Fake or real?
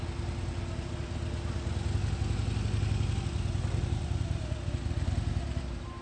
real